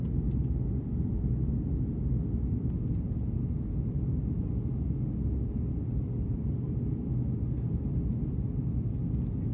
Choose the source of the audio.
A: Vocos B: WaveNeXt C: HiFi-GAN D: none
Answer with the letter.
D